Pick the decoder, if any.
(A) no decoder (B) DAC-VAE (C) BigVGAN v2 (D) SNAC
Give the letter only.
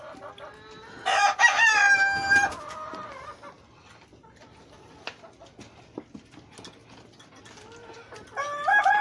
A